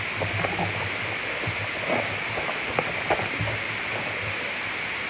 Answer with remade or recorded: recorded